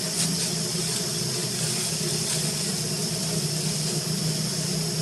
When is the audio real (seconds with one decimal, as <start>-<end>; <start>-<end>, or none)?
0.0-1.4; 4.0-5.0